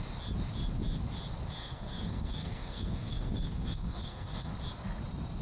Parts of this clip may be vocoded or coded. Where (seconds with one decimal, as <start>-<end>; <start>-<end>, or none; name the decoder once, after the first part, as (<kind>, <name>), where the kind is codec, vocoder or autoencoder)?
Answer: 1.6-4.5 (codec, SNAC)